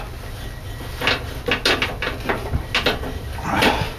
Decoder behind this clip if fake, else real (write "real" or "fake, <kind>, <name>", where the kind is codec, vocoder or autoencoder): real